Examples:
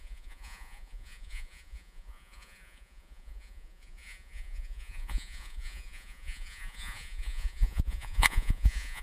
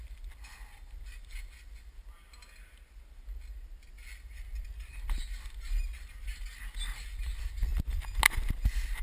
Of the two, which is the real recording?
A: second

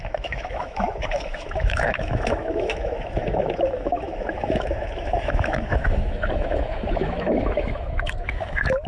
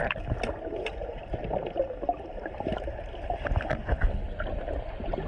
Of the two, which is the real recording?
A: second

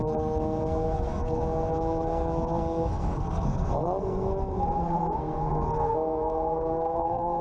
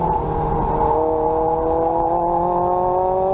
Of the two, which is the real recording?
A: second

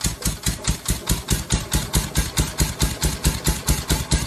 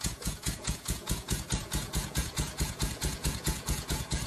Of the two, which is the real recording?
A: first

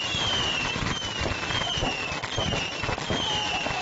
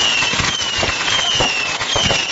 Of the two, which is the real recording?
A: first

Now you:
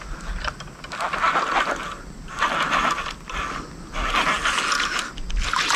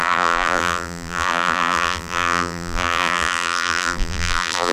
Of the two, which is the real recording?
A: first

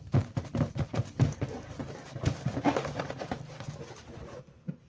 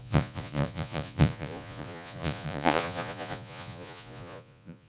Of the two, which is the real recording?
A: first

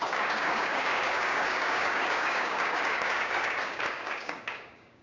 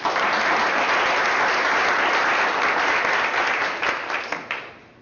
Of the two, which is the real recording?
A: second